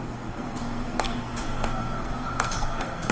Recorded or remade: remade